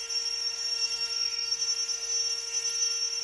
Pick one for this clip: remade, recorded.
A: remade